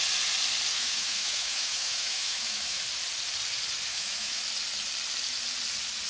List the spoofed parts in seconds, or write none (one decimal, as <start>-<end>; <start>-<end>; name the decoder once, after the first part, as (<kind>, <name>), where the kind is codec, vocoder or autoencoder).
0.7-2.8 (autoencoder, DAC-VAE); 3.9-4.4